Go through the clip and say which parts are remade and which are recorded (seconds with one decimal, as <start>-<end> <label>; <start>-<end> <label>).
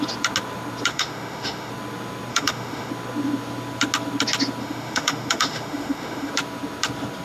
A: 0.0-0.9 recorded; 0.9-1.7 remade; 1.7-2.3 recorded; 2.3-2.9 remade; 2.9-4.6 recorded; 4.6-6.3 remade; 6.3-7.2 recorded